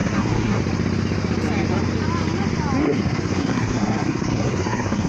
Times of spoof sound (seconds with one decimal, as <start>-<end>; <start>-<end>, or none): 0.0-0.6; 2.8-5.1